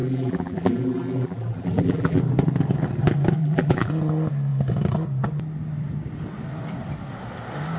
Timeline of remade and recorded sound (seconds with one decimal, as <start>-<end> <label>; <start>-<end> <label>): 0.0-2.2 remade; 2.2-3.4 recorded; 3.4-3.9 remade; 3.9-7.8 recorded